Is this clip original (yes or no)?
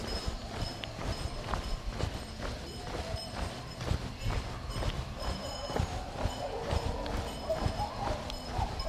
yes